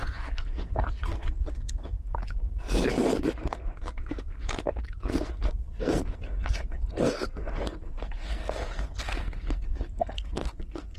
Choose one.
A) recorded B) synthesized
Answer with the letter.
B